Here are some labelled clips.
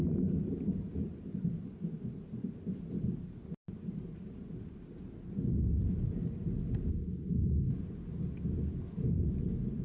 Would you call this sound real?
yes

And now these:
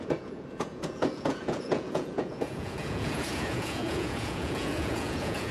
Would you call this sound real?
no